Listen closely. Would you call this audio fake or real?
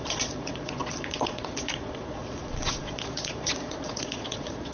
fake